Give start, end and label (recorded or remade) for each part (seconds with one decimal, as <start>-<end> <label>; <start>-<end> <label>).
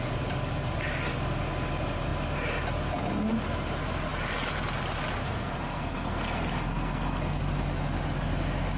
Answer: 0.0-5.2 recorded; 5.2-7.4 remade; 7.4-8.8 recorded